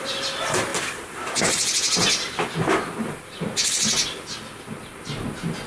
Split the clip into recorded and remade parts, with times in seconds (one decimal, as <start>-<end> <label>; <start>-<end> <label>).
0.0-5.7 recorded